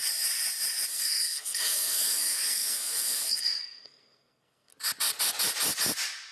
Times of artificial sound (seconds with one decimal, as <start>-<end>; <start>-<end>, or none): 0.9-4.7